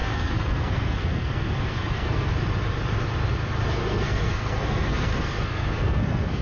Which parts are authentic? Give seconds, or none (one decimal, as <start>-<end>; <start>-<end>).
2.3-3.8